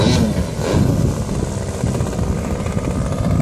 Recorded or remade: recorded